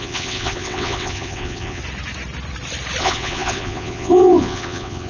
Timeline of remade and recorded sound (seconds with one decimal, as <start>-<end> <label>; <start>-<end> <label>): 0.0-1.8 remade; 1.8-3.0 recorded; 3.0-5.1 remade